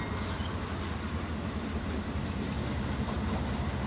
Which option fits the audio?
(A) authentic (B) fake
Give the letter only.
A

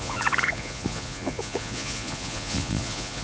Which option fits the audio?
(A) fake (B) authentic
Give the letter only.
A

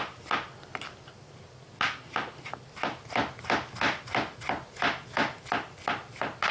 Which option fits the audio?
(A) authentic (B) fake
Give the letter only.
A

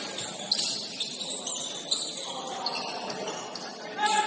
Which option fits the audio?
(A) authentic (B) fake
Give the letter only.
A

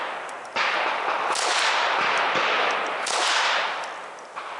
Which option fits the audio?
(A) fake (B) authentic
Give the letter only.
B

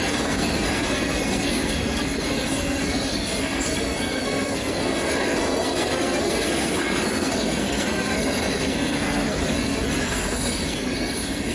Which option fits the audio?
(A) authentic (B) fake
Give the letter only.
B